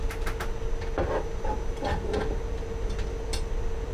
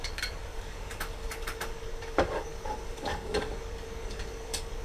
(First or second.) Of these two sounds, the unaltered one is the first